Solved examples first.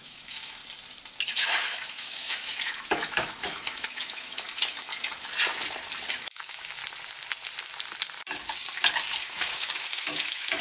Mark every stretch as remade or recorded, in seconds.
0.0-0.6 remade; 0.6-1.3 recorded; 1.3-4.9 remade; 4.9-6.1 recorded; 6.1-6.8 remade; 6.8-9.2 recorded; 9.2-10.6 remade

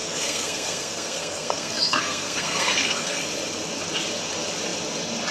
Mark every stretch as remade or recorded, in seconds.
0.0-3.2 remade; 3.2-5.3 recorded

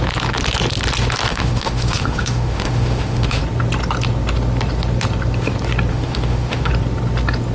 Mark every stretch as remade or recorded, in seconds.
0.0-1.3 recorded; 1.3-3.4 remade; 3.4-5.9 recorded; 5.9-6.7 remade; 6.7-7.5 recorded

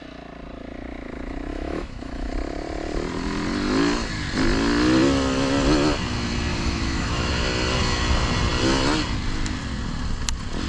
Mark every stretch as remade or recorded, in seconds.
0.0-1.5 recorded; 1.5-2.3 remade; 2.3-6.5 recorded; 6.5-7.3 remade; 7.3-10.7 recorded

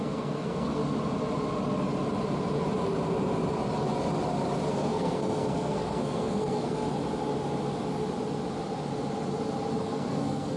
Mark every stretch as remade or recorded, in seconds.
0.0-0.8 remade; 0.8-4.7 recorded; 4.7-6.9 remade; 6.9-9.8 recorded; 9.8-10.6 remade